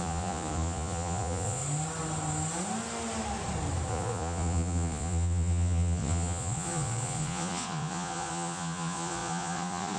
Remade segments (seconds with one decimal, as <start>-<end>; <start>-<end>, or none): 0.0-1.6; 3.9-10.0